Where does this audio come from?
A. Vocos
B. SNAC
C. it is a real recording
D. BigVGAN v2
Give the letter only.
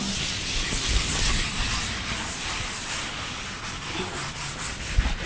C